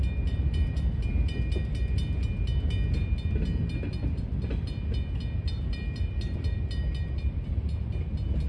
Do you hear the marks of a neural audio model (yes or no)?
no